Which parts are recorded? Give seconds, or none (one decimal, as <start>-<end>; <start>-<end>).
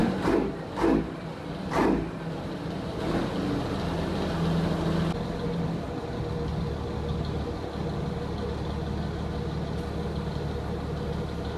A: 0.0-11.6